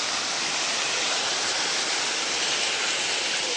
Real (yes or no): yes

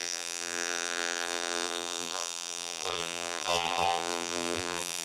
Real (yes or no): no